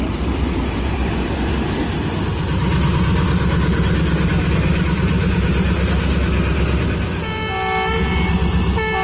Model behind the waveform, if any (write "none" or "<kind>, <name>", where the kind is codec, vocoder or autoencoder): none